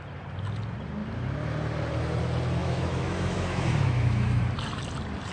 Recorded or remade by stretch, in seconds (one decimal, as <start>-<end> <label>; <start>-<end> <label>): 0.0-2.6 recorded; 2.6-4.4 remade; 4.4-5.3 recorded